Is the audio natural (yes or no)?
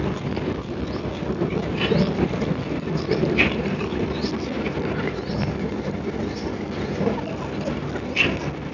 yes